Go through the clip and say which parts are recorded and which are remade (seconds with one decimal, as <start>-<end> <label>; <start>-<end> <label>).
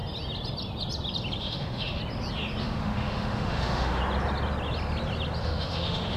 0.0-1.4 recorded; 1.4-2.0 remade; 2.0-2.6 recorded; 2.6-4.0 remade; 4.0-5.4 recorded; 5.4-6.2 remade